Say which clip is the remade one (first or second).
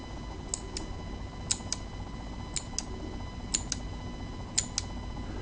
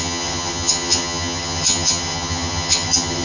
second